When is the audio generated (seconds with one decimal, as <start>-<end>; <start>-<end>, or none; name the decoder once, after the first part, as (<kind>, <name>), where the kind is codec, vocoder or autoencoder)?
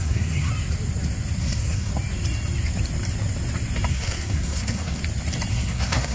0.0-0.5 (codec, SNAC); 1.4-1.9; 3.9-5.0; 5.5-6.1